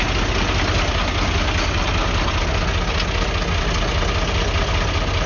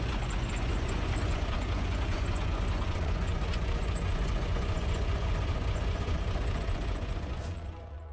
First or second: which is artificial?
second